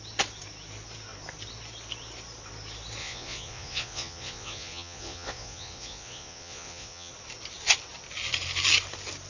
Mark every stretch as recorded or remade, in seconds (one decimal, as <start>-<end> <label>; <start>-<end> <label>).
0.0-3.0 recorded; 3.0-7.1 remade; 7.1-9.3 recorded